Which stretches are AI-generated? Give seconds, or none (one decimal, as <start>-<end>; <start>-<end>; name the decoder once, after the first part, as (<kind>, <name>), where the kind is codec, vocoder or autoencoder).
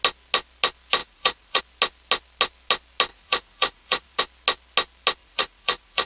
1.0-1.6 (vocoder, Vocos); 3.1-4.2; 5.2-6.1